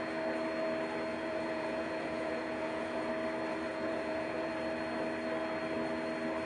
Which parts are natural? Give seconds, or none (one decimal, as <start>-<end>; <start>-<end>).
0.0-1.1; 3.1-3.5; 4.5-6.5